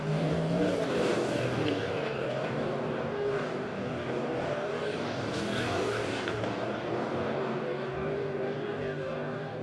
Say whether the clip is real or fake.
fake